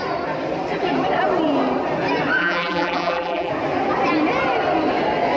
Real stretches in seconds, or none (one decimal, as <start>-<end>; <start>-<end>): 0.0-2.4; 3.5-5.4